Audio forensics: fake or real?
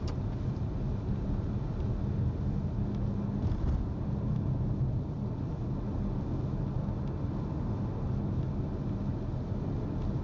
real